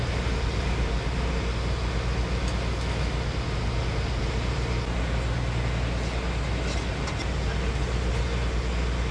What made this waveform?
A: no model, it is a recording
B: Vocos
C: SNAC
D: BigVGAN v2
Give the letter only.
A